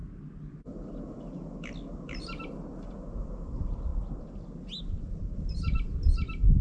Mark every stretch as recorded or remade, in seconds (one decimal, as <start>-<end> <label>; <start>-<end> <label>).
0.0-6.6 recorded